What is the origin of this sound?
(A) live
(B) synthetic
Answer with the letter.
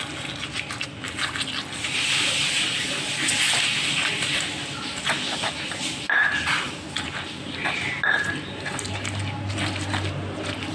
A